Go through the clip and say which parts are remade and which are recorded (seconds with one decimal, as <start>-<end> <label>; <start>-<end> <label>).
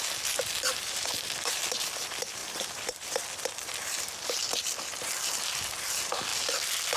0.0-6.3 remade; 6.3-7.0 recorded